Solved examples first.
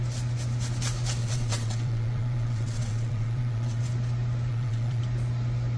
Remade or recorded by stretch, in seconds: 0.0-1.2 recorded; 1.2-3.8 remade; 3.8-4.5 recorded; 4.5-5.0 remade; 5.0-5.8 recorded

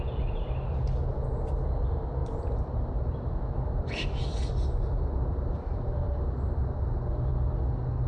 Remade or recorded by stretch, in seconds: 0.0-8.1 recorded